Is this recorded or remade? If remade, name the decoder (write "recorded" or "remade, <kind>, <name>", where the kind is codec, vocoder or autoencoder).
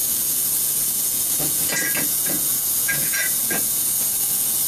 remade, vocoder, Vocos